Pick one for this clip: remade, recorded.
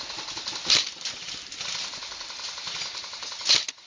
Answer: recorded